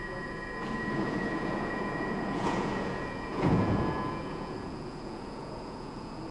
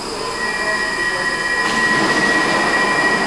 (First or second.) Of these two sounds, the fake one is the first